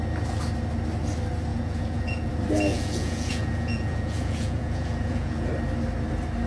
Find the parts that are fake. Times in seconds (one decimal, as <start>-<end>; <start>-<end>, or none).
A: 1.5-2.3; 2.7-5.5